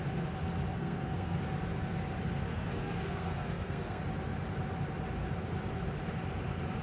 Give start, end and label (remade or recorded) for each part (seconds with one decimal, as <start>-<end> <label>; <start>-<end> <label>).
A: 0.0-0.7 recorded; 0.7-1.4 remade; 1.4-2.5 recorded; 2.5-4.0 remade; 4.0-6.8 recorded